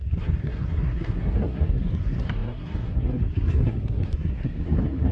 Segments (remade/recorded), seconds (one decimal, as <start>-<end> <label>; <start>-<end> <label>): 0.0-5.1 remade